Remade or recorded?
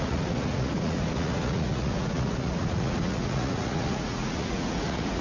remade